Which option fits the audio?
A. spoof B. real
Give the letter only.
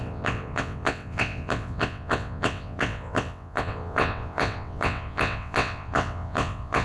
A